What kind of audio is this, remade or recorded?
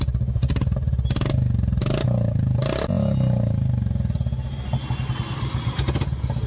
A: recorded